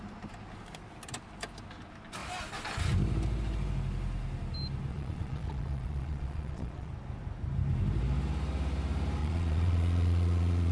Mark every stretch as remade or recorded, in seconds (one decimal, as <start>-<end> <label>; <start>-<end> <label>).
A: 0.0-4.9 recorded; 4.9-6.9 remade; 6.9-9.2 recorded; 9.2-10.7 remade